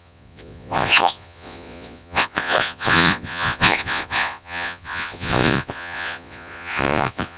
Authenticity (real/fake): fake